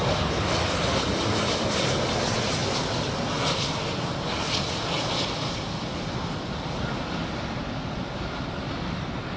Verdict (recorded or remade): recorded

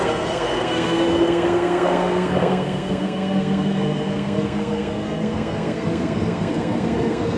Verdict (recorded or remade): remade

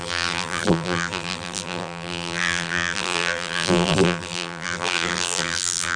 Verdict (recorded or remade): remade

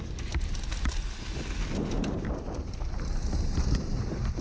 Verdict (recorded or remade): recorded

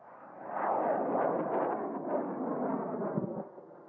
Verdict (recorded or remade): recorded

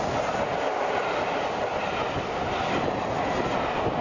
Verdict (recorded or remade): recorded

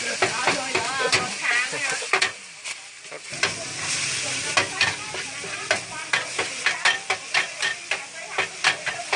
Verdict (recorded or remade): recorded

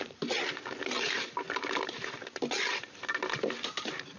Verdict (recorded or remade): recorded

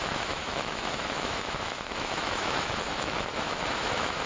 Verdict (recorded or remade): remade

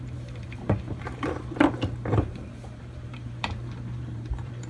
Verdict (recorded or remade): remade